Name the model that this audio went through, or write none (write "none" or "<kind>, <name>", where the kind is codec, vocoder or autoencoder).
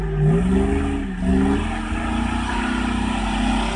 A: none